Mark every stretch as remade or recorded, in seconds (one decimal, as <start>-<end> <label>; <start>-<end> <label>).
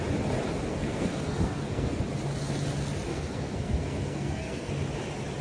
0.0-0.7 recorded; 0.7-2.0 remade; 2.0-3.1 recorded; 3.1-4.7 remade; 4.7-5.4 recorded